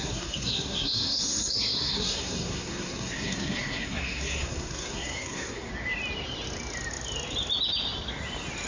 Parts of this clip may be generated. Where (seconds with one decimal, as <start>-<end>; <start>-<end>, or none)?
0.0-5.7